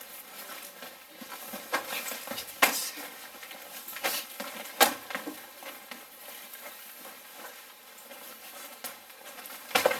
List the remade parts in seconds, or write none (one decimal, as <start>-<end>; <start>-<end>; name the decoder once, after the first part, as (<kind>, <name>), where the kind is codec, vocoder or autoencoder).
none